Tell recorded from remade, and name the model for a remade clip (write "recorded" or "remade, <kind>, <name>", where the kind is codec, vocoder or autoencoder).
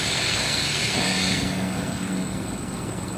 remade, codec, SNAC